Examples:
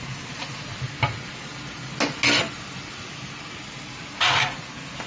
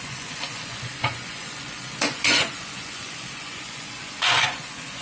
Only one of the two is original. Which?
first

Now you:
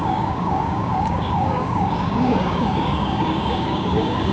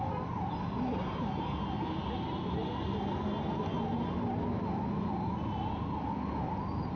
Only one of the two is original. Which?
second